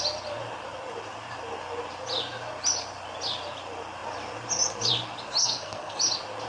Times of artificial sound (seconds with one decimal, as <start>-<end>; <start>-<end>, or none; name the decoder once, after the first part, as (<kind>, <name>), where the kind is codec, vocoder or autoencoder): 5.4-6.0 (codec, SNAC)